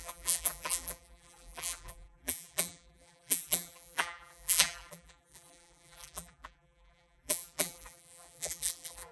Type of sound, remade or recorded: remade